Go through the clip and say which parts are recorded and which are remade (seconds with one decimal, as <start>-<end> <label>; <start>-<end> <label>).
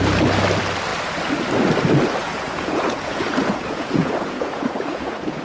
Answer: 0.0-2.2 recorded; 2.2-5.4 remade